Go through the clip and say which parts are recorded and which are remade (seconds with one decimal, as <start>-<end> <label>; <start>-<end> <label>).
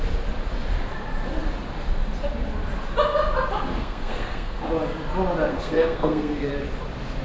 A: 0.0-3.8 recorded; 3.8-4.6 remade; 4.6-5.5 recorded; 5.5-6.5 remade; 6.5-7.2 recorded